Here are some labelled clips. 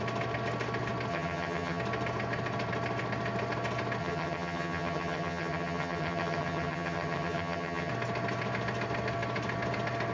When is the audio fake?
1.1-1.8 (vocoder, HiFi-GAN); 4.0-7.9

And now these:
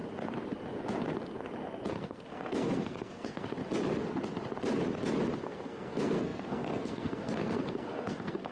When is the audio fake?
1.9-3.6 (codec, SNAC); 5.4-8.5